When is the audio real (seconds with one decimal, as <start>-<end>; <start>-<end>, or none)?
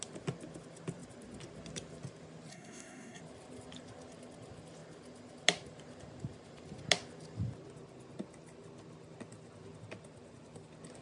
0.0-2.5; 3.2-11.0